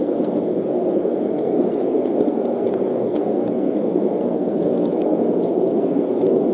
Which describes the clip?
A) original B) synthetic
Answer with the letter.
B